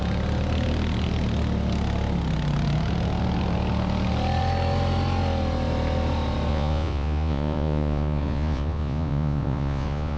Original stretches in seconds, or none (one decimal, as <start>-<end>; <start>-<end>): 0.0-6.5